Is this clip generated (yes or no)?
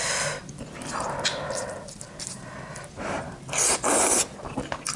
no